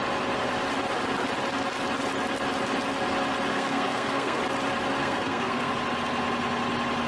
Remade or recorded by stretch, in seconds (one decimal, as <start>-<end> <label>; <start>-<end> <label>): 0.0-3.5 recorded; 3.5-4.4 remade; 4.4-5.0 recorded; 5.0-5.7 remade; 5.7-7.1 recorded